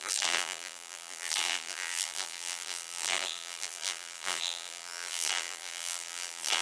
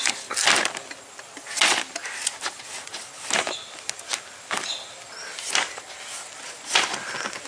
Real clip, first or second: second